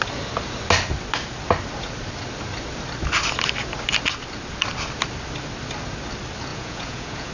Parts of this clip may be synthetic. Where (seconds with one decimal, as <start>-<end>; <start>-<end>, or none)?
6.5-7.3